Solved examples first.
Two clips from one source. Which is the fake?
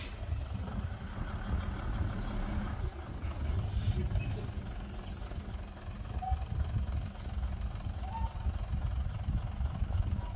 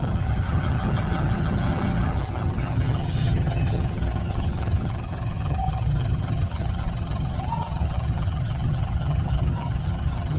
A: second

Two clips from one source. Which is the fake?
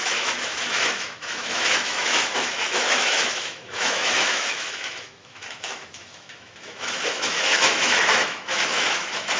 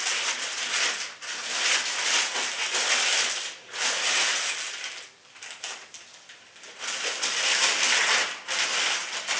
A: first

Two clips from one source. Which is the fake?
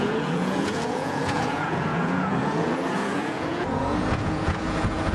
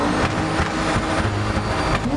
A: first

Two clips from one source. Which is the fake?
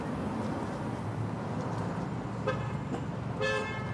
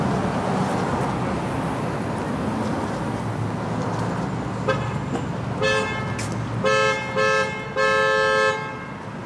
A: first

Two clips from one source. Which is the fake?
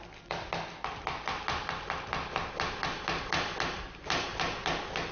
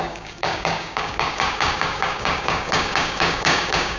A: second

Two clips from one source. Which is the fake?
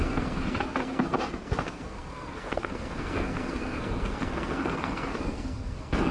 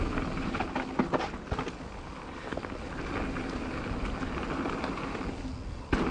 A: first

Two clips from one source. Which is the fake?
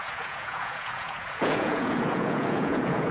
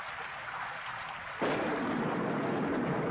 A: first